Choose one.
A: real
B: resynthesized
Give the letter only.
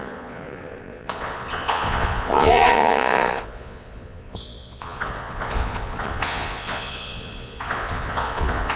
B